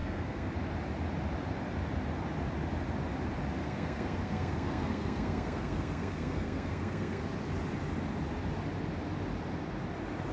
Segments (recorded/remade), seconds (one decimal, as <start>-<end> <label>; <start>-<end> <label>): 0.0-0.5 remade; 0.5-3.6 recorded; 3.6-7.2 remade; 7.2-10.3 recorded